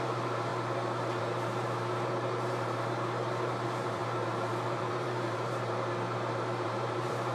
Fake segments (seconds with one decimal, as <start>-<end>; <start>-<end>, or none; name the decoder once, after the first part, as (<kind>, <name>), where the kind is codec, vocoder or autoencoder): 0.0-0.5 (vocoder, BigVGAN v2); 1.2-7.3